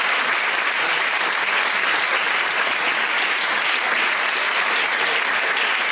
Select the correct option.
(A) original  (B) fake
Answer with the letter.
A